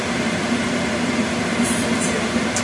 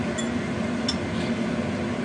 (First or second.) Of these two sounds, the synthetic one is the first